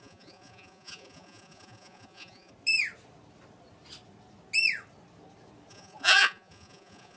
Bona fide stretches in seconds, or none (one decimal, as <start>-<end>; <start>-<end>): 2.5-5.7